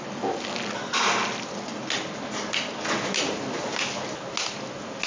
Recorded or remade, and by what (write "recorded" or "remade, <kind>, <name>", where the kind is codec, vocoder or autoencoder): recorded